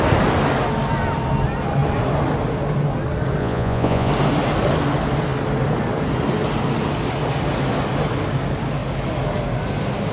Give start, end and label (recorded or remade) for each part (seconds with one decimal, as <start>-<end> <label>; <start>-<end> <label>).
0.0-3.4 recorded; 3.4-4.1 remade; 4.1-10.1 recorded